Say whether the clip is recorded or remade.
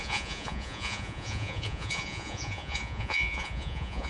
remade